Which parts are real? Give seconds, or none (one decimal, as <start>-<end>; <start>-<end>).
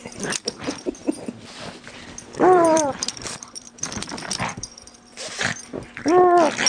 0.0-1.0; 5.0-6.7